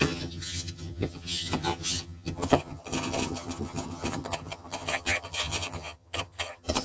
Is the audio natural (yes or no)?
no